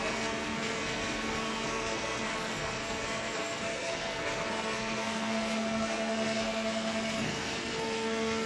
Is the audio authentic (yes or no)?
no